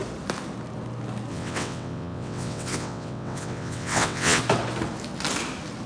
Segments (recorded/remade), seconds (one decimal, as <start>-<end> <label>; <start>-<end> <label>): 0.0-1.3 recorded; 1.3-4.4 remade; 4.4-5.9 recorded